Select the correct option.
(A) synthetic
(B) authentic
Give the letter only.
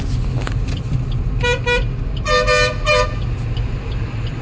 B